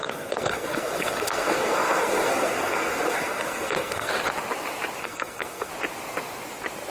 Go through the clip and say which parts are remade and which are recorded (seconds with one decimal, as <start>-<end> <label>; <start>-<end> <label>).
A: 0.0-4.1 remade; 4.1-5.0 recorded; 5.0-5.7 remade; 5.7-6.9 recorded